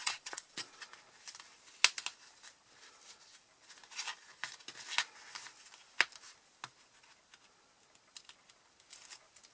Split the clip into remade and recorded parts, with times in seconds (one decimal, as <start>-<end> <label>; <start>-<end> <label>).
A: 0.0-0.8 remade; 0.8-9.5 recorded